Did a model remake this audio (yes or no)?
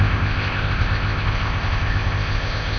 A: yes